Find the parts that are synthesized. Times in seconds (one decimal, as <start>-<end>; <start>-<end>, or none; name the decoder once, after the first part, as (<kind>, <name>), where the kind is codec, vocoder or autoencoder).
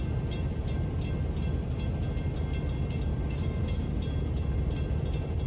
3.1-4.0 (codec, DAC)